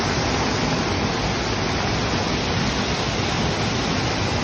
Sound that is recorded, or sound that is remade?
recorded